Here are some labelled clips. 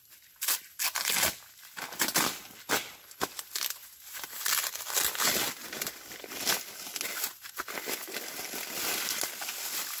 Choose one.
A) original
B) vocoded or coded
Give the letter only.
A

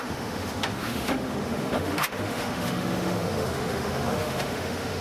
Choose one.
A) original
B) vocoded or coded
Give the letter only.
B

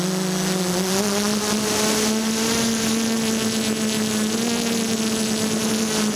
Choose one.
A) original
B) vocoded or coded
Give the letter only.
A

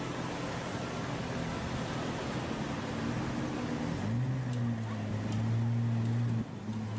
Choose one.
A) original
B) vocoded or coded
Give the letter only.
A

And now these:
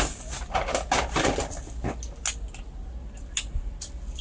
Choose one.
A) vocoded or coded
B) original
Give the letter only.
B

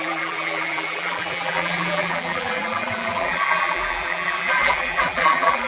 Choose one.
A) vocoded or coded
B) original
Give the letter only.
A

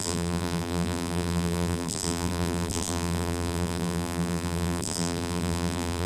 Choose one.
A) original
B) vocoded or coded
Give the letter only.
B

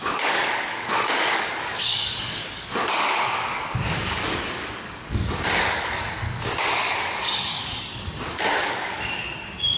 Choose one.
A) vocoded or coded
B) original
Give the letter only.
A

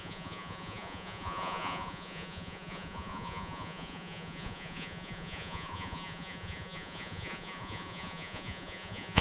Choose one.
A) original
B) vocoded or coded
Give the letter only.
B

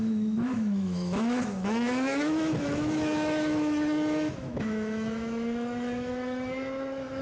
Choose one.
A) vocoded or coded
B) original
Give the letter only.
A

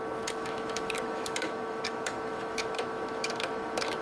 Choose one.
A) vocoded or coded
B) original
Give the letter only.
A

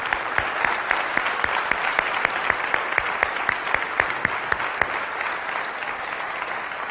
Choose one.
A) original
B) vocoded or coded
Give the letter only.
A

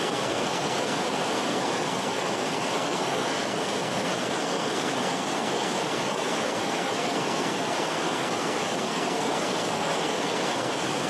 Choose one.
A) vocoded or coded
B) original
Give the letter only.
A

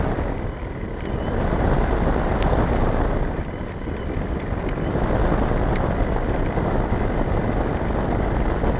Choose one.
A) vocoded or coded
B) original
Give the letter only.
B